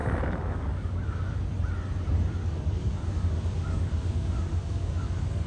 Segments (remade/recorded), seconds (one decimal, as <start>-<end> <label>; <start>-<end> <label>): 0.0-1.4 remade; 1.4-2.4 recorded; 2.4-5.5 remade